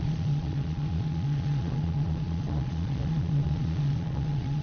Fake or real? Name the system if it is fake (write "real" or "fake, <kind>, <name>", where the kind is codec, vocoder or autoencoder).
fake, vocoder, Vocos